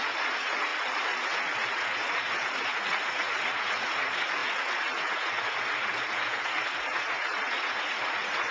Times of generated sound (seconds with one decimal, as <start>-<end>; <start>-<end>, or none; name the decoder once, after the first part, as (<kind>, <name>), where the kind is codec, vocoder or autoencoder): 0.0-8.5 (vocoder, Vocos)